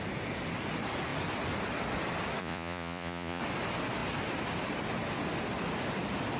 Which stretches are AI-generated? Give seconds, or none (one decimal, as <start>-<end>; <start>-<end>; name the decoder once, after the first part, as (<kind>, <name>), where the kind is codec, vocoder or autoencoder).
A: 2.4-3.4 (vocoder, Vocos)